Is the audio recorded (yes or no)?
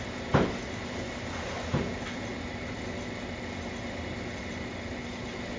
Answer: yes